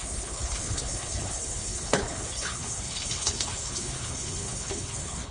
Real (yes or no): no